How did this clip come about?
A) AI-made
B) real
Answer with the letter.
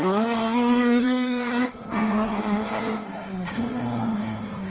A